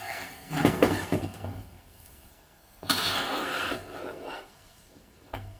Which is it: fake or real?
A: fake